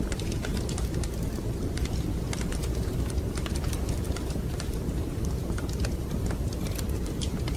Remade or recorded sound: remade